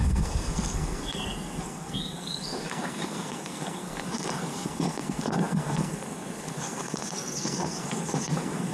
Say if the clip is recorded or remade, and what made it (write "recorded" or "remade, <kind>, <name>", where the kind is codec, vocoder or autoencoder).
remade, codec, SNAC